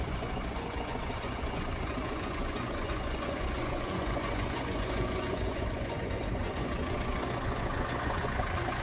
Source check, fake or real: fake